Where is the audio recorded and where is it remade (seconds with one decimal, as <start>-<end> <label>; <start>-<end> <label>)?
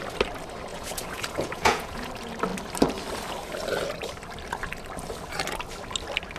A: 0.0-0.7 recorded; 0.7-2.1 remade; 2.1-6.4 recorded